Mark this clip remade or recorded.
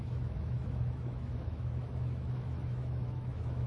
remade